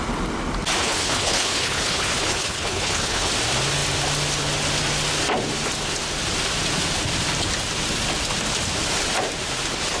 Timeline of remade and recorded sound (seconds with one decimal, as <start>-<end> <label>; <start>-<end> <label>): 0.0-0.8 recorded; 0.8-3.3 remade; 3.3-10.0 recorded